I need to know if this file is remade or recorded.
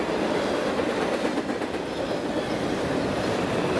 recorded